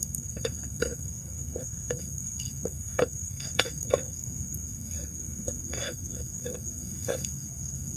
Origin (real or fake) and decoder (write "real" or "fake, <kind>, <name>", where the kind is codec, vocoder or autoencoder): fake, codec, SNAC